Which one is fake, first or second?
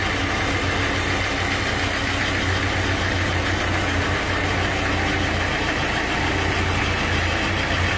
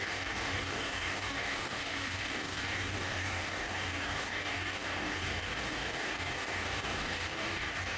second